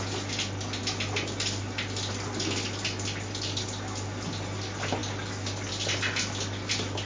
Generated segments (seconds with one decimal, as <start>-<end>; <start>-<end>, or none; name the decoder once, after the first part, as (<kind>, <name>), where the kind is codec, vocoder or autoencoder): none

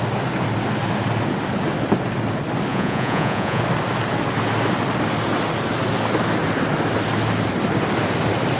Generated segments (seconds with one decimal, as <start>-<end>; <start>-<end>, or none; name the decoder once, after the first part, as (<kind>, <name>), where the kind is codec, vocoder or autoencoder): 2.7-3.6 (vocoder, Vocos)

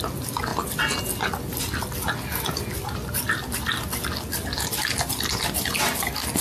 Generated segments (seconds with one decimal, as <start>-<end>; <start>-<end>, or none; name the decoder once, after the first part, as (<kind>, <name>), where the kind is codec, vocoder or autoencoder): none

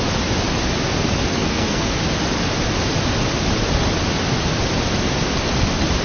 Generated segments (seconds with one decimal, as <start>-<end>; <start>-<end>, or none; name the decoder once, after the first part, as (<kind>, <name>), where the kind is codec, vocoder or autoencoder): 1.3-1.9 (codec, SNAC)